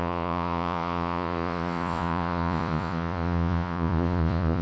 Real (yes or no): no